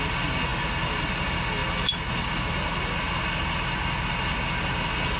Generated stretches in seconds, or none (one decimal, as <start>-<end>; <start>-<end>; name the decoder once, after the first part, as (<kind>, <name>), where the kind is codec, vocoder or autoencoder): none